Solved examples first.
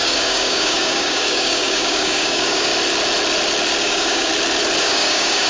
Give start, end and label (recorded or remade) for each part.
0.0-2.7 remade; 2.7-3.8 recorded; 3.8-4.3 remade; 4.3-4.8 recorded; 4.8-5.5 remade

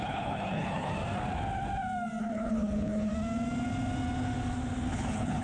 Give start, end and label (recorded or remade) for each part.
0.0-0.9 remade; 0.9-2.2 recorded; 2.2-3.1 remade; 3.1-4.9 recorded; 4.9-5.4 remade

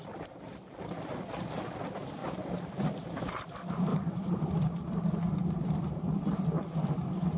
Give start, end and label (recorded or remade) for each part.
0.0-3.9 recorded; 3.9-6.9 remade; 6.9-7.4 recorded

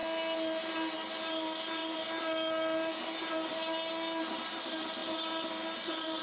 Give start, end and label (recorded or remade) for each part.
0.0-6.2 recorded